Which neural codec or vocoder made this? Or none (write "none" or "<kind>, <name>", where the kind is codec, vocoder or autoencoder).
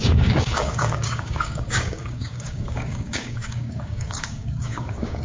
codec, DAC